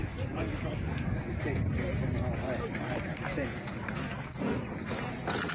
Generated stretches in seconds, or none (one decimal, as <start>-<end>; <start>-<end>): 0.0-1.4; 3.1-4.4